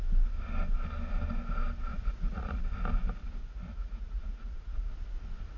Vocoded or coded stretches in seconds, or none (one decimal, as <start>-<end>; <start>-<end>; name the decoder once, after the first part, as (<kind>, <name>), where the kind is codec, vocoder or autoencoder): 1.9-2.6 (vocoder, Vocos); 3.4-4.9